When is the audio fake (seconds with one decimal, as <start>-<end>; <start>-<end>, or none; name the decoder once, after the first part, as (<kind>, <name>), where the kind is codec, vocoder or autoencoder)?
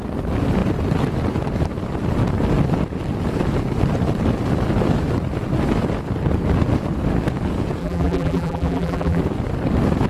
7.8-9.2 (vocoder, BigVGAN v2)